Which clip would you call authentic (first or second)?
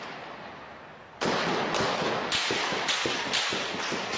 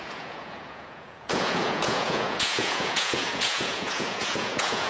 first